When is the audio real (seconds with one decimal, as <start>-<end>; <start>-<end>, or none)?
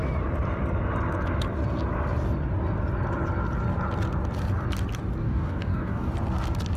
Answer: 0.0-5.2; 6.1-6.8